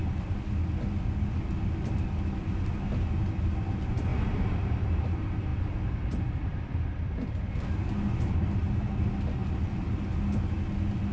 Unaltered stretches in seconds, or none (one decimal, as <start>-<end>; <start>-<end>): 0.0-4.1; 5.0-5.5; 7.8-9.4; 10.1-11.1